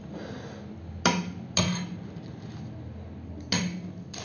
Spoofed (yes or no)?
no